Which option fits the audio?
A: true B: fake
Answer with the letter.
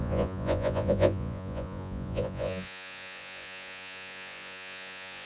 B